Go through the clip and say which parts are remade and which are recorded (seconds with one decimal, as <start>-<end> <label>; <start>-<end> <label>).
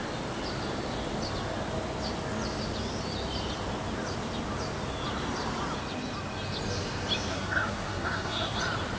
0.0-7.3 recorded; 7.3-8.6 remade; 8.6-9.0 recorded